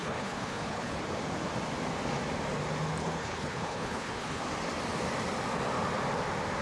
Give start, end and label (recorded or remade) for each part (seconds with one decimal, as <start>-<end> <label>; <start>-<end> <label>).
0.0-1.0 remade; 1.0-3.0 recorded; 3.0-4.4 remade; 4.4-6.6 recorded